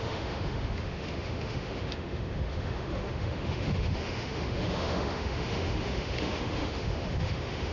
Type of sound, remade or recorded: remade